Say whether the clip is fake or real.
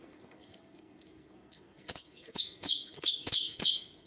fake